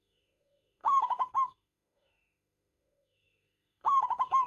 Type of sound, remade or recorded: remade